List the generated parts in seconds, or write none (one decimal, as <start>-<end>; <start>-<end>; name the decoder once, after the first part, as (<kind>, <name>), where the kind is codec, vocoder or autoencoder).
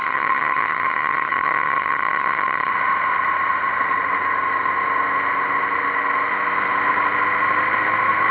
0.0-2.7 (vocoder, HiFi-GAN)